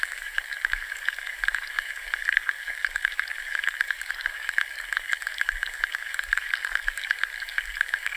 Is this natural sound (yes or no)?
no